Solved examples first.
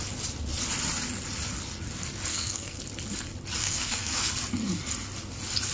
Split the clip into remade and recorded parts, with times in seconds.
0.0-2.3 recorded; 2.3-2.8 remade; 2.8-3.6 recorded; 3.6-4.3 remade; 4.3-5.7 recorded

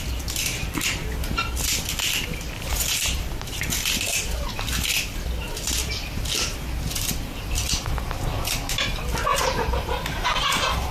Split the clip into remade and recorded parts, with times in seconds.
0.0-2.7 recorded; 2.7-3.6 remade; 3.6-9.3 recorded; 9.3-10.9 remade

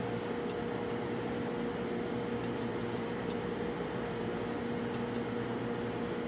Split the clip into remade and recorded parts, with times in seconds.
0.0-2.7 recorded; 2.7-4.4 remade; 4.4-6.3 recorded